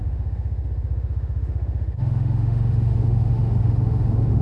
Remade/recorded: remade